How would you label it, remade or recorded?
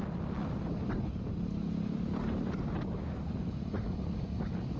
recorded